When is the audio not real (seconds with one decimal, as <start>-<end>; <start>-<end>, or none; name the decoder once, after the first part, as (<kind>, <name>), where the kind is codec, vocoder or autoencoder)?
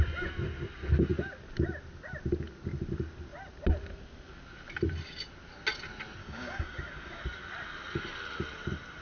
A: 6.2-7.2 (codec, DAC)